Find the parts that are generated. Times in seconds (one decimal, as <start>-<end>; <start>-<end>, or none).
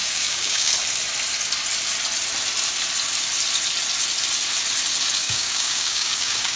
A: 0.0-0.7; 5.2-6.6